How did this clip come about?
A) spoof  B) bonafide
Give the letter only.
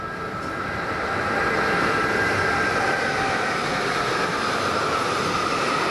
B